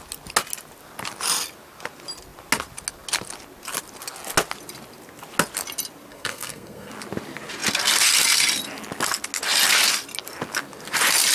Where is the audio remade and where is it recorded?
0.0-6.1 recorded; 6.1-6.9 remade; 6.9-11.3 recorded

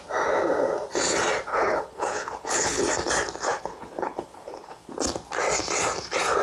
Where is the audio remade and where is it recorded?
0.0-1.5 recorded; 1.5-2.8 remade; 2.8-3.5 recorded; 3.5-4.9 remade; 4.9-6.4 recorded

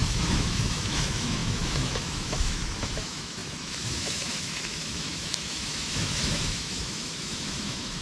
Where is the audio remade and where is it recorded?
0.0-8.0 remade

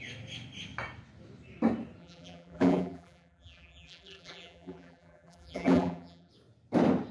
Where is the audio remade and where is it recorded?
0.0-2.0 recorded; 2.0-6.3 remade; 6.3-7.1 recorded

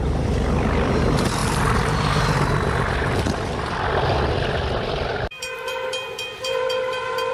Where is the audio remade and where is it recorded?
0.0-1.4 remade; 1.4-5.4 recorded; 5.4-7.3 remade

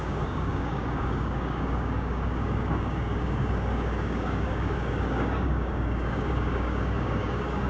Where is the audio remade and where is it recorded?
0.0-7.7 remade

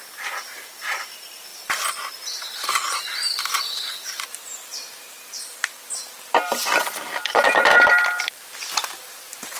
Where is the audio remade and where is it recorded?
0.0-9.6 remade